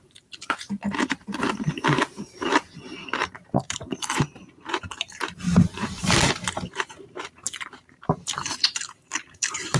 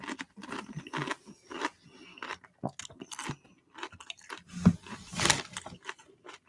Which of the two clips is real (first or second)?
second